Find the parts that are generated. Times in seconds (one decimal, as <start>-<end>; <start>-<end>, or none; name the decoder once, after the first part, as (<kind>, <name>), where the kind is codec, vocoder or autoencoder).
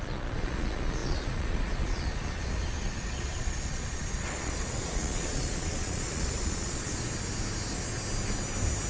0.0-6.9 (vocoder, Vocos)